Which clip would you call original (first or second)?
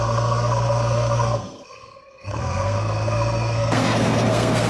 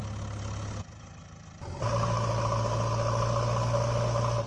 second